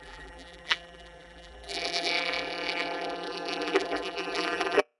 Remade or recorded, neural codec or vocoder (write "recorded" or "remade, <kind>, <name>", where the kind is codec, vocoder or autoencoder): remade, vocoder, BigVGAN v2